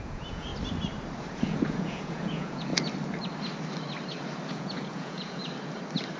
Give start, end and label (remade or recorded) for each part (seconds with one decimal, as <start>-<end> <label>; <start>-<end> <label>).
0.0-0.5 remade; 0.5-1.3 recorded; 1.3-2.7 remade; 2.7-4.5 recorded; 4.5-5.4 remade; 5.4-6.2 recorded